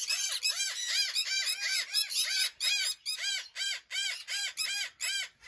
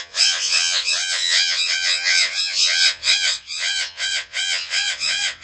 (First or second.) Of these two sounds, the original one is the first